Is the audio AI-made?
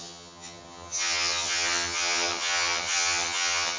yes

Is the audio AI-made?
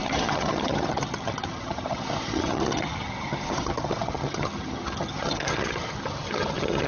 yes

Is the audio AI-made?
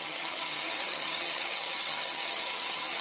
yes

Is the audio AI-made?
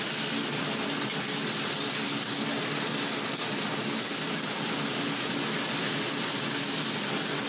no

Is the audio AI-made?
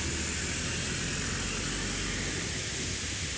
no